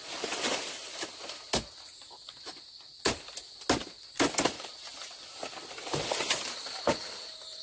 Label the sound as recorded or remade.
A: recorded